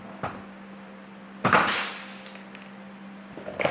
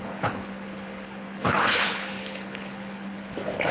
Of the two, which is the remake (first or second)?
second